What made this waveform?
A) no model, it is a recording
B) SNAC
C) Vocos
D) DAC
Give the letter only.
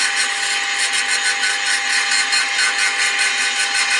A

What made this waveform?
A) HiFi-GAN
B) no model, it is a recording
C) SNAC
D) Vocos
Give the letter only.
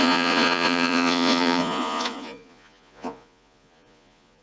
D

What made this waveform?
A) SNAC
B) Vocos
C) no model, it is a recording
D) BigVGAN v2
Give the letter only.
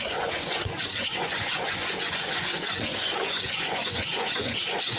B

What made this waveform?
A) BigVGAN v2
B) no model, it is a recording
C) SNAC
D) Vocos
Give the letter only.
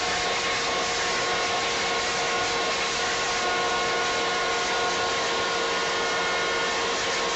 B